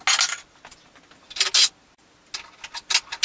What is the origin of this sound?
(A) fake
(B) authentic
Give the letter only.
B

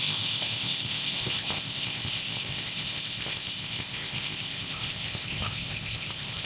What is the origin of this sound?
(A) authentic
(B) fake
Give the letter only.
B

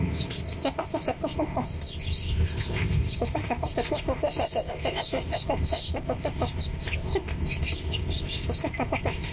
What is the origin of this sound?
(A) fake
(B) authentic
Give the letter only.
A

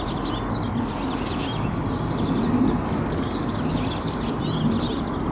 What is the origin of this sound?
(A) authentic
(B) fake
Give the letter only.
A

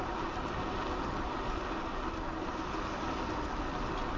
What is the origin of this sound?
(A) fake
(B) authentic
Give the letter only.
B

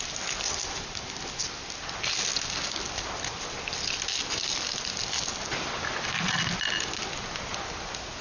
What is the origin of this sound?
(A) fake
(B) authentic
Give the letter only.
B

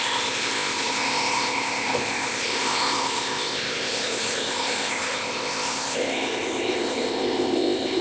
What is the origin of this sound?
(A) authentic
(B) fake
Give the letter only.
B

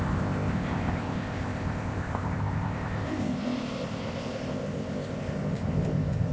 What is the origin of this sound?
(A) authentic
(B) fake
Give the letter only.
B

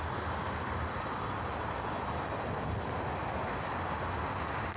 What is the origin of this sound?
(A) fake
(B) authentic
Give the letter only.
B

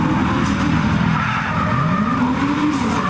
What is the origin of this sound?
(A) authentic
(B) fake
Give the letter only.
A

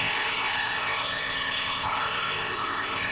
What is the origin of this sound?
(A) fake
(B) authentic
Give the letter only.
A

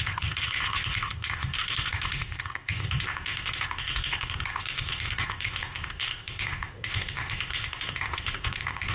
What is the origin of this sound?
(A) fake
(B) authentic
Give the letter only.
A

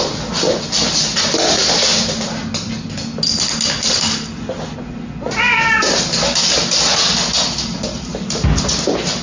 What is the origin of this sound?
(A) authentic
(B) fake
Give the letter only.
A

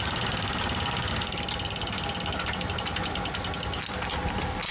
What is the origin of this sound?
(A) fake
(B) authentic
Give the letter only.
B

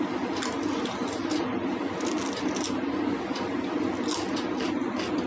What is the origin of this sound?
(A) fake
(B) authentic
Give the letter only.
B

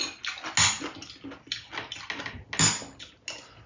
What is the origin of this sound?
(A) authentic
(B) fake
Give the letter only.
A